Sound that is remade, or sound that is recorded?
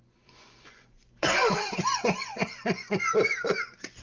remade